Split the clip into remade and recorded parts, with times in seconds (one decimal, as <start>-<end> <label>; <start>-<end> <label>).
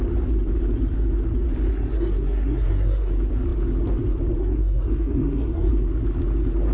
0.0-1.7 recorded; 1.7-3.1 remade; 3.1-4.4 recorded; 4.4-5.7 remade; 5.7-6.7 recorded